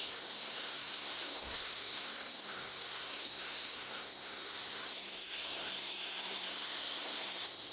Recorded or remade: remade